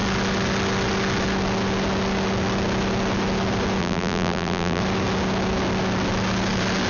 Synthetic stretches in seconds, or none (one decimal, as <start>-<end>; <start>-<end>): 3.8-4.8